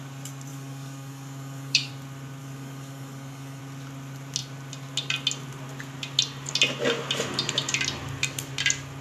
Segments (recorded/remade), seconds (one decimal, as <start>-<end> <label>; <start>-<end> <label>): 0.0-0.5 recorded; 0.5-1.9 remade; 1.9-2.4 recorded; 2.4-3.6 remade; 3.6-9.0 recorded